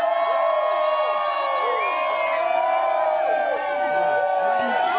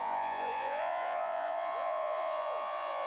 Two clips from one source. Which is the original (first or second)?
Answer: first